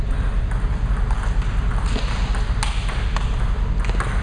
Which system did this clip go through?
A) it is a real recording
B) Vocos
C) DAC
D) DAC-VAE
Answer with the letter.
A